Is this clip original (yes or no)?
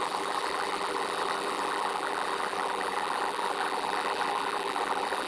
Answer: no